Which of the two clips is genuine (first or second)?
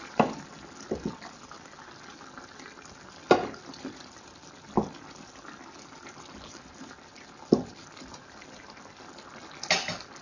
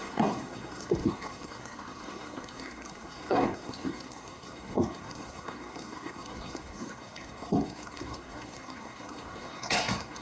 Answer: first